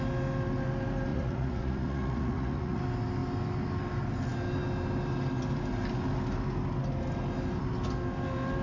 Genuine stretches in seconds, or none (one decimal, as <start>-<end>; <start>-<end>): 0.0-1.1; 2.8-8.6